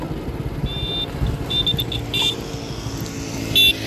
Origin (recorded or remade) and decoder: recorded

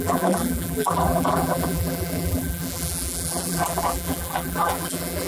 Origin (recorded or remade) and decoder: remade, vocoder, BigVGAN v2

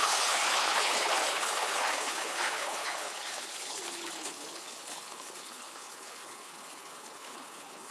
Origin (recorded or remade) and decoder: remade, codec, HILCodec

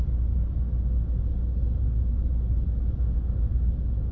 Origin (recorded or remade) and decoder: recorded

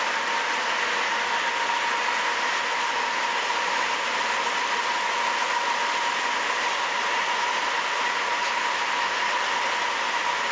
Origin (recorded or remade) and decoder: recorded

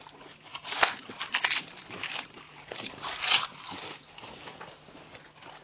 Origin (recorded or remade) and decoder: remade, vocoder, BigVGAN v2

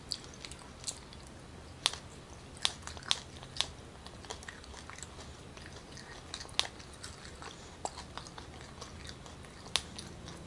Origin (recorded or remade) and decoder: recorded